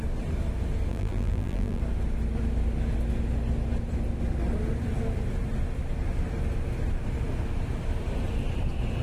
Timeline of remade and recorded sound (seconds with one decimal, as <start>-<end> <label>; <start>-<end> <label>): 0.0-0.9 recorded; 0.9-1.8 remade; 1.8-9.0 recorded